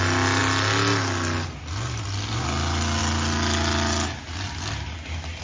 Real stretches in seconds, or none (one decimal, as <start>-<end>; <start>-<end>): 0.0-5.4